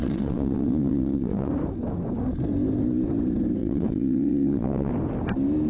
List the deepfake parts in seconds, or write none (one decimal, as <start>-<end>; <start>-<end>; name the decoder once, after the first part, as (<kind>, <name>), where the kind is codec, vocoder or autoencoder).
0.0-1.5 (vocoder, WaveNeXt); 3.6-4.9